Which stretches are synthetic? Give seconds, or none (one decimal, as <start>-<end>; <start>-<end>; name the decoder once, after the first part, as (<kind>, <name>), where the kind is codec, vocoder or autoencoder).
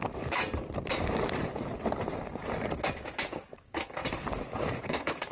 3.2-4.0 (codec, DAC); 4.8-5.3